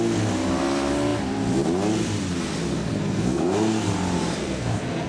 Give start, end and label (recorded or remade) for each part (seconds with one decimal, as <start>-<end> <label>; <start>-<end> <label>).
0.0-2.7 recorded; 2.7-3.9 remade; 3.9-4.4 recorded; 4.4-5.1 remade

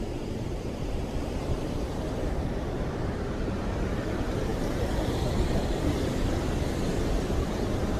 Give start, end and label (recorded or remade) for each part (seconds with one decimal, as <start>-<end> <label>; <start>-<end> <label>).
0.0-8.0 remade

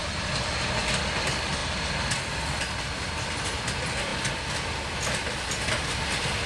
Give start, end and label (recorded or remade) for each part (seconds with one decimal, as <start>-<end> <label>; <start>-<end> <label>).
0.0-1.6 recorded; 1.6-2.4 remade; 2.4-6.5 recorded

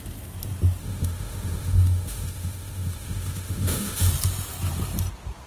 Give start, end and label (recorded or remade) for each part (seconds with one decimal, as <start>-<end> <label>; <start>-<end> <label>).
0.0-0.8 recorded; 0.8-4.1 remade; 4.1-5.5 recorded

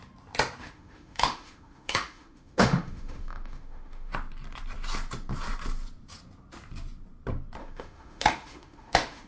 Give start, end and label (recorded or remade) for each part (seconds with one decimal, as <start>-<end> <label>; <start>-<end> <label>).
0.0-0.6 recorded; 0.6-4.1 remade; 4.1-7.6 recorded; 7.6-9.3 remade

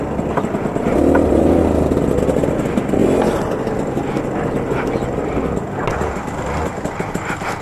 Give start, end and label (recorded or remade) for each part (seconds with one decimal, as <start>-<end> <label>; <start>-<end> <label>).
0.0-7.6 recorded

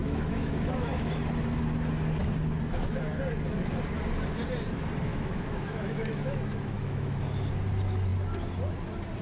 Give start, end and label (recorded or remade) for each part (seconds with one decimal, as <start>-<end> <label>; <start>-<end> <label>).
0.0-1.2 remade; 1.2-5.1 recorded; 5.1-7.2 remade; 7.2-9.2 recorded